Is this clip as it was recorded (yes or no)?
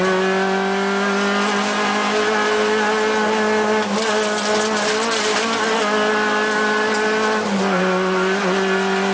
yes